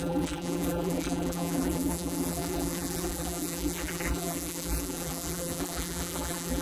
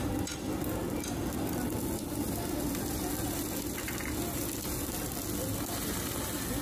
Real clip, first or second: second